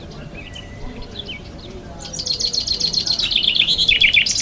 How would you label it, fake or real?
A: real